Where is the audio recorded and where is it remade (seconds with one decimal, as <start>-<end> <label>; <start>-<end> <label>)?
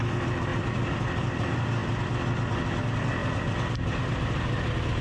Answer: 0.0-0.5 recorded; 0.5-1.2 remade; 1.2-1.8 recorded; 1.8-2.5 remade; 2.5-3.2 recorded; 3.2-5.0 remade